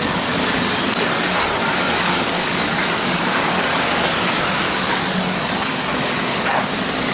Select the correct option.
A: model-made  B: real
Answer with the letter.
A